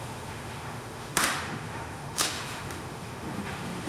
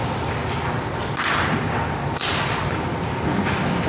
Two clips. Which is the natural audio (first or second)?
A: second